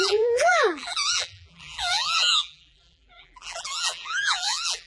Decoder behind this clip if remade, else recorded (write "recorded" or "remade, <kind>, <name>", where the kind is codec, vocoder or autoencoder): remade, vocoder, BigVGAN v2